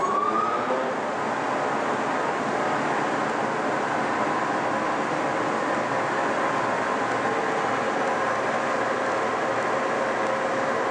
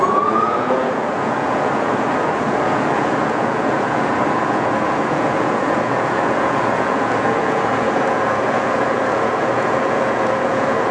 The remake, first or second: second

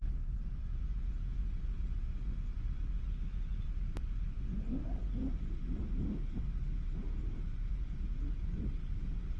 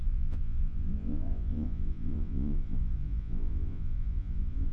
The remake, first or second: second